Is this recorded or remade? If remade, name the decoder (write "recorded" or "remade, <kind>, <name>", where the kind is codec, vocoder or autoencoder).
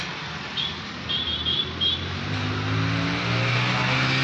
recorded